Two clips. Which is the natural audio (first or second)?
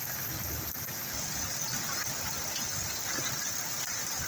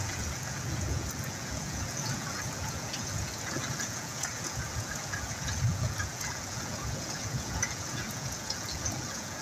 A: first